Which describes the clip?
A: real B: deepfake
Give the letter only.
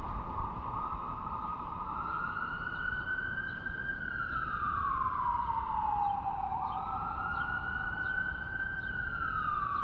A